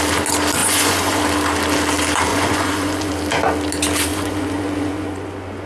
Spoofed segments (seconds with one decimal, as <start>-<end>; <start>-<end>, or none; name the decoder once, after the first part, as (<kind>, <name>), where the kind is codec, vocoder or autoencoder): 0.6-1.2 (vocoder, Vocos); 2.3-3.1; 4.1-5.7